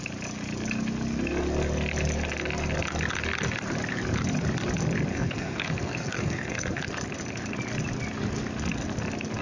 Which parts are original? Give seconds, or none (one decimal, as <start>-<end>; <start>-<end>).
0.0-5.1; 6.8-9.4